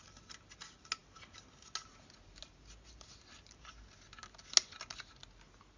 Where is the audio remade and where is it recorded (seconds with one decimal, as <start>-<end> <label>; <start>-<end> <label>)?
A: 0.0-5.8 recorded